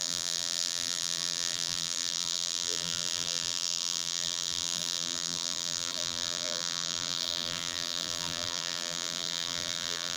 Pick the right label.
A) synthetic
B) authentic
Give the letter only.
A